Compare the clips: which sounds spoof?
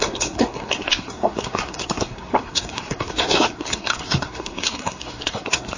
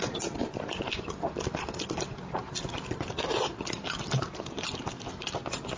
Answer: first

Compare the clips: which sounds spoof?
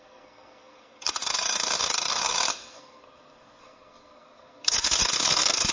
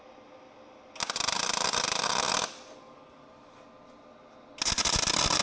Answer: first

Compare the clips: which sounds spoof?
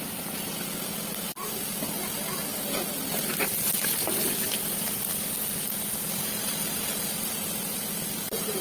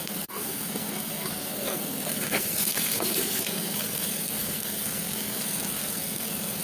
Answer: second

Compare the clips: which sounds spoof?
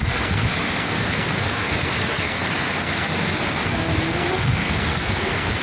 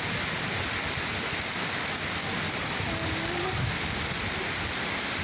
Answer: first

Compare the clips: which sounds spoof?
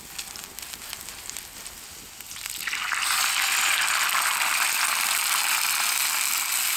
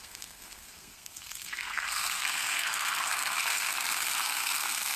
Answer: second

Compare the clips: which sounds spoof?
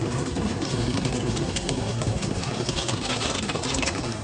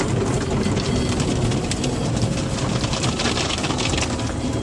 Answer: first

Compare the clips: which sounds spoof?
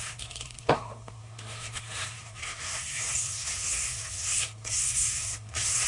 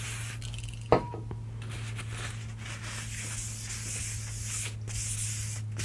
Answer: first